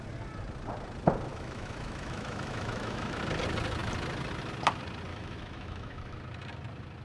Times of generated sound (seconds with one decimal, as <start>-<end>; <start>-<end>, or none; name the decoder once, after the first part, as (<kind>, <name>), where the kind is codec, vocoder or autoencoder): 1.3-3.2 (autoencoder, DAC-VAE); 5.1-6.2